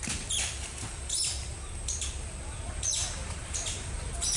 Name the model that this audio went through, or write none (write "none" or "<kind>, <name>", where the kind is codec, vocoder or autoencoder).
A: vocoder, BigVGAN v2